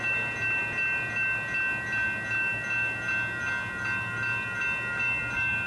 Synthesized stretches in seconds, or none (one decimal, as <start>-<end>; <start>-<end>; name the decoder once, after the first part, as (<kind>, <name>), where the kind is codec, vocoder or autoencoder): none